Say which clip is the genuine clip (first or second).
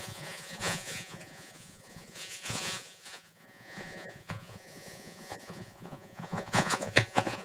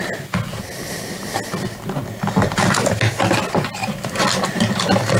second